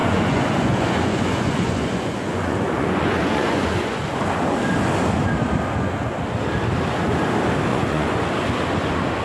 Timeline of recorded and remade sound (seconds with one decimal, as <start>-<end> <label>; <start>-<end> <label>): 0.0-4.0 remade; 4.0-7.7 recorded; 7.7-8.3 remade; 8.3-9.2 recorded